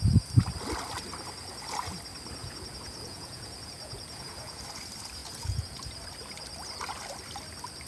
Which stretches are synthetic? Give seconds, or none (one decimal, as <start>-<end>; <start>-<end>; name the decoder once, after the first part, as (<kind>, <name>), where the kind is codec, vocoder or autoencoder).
2.4-4.6 (vocoder, Vocos); 5.2-5.8